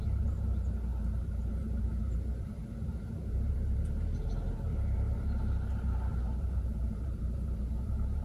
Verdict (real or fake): fake